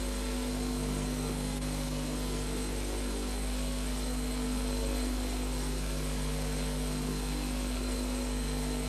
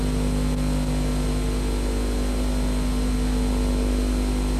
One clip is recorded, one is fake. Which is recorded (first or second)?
second